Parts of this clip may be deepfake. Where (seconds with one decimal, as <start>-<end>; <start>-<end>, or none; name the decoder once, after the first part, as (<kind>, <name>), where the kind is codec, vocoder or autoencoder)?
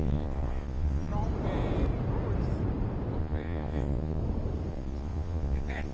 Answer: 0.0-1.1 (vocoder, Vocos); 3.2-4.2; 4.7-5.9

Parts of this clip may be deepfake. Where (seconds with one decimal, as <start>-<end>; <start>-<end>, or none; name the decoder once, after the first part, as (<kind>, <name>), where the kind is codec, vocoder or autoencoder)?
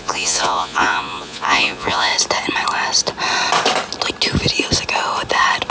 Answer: 0.0-2.1 (vocoder, Vocos)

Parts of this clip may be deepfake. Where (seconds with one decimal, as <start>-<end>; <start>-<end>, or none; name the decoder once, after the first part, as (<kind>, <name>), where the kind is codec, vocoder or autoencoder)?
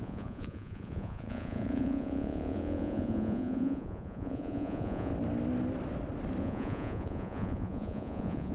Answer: 0.0-5.1 (vocoder, Vocos); 6.4-8.5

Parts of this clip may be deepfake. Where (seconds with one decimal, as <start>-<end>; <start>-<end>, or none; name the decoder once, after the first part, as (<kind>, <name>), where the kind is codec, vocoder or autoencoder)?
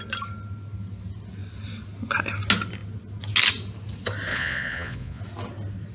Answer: 4.3-5.2 (vocoder, Vocos)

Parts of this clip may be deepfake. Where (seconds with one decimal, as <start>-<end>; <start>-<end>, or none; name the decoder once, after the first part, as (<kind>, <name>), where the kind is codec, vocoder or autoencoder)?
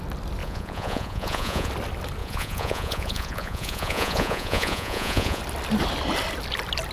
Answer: 0.4-1.7 (vocoder, Vocos); 2.2-5.4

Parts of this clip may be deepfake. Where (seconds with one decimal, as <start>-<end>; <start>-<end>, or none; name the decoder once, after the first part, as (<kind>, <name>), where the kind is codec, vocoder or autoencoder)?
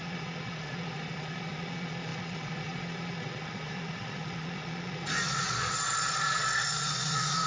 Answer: 0.0-7.5 (vocoder, Vocos)